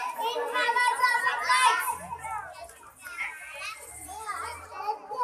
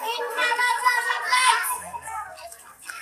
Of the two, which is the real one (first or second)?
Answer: first